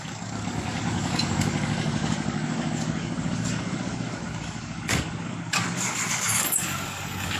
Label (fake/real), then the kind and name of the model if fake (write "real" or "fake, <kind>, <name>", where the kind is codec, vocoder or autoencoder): fake, codec, DAC